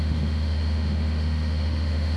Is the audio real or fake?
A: fake